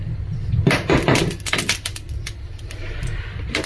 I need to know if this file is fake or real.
fake